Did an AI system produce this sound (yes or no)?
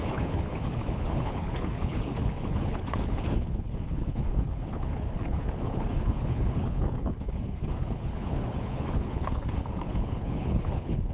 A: yes